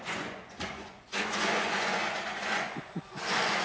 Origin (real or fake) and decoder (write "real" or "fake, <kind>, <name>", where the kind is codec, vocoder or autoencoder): fake, vocoder, Vocos